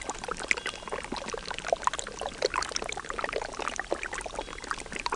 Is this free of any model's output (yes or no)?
yes